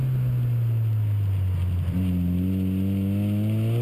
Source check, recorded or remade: recorded